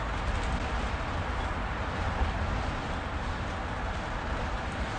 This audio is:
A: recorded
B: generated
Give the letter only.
A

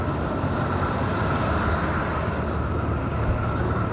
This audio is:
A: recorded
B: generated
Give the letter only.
A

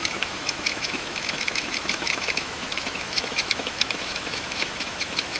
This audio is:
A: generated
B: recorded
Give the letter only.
A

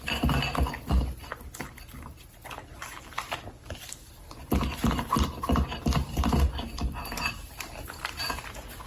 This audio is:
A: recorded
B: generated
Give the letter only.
A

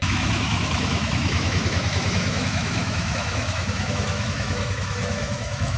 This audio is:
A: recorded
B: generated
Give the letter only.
B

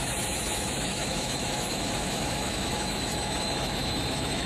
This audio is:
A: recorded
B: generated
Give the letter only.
B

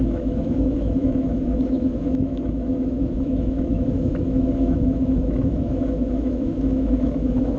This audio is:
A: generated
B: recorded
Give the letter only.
A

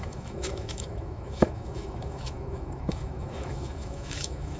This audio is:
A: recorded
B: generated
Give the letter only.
B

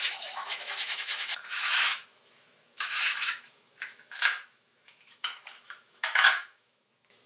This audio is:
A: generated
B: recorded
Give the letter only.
A